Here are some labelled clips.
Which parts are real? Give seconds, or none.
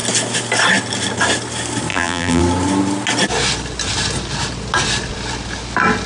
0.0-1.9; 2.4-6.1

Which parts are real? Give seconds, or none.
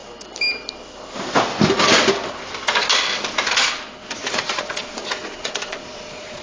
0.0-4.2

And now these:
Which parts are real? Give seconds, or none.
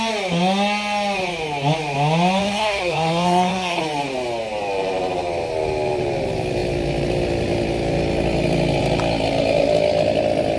0.0-2.4; 3.8-10.6